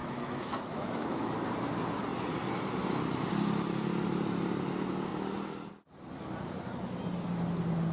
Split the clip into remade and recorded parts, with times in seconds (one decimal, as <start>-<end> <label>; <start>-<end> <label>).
0.0-1.3 remade; 1.3-7.9 recorded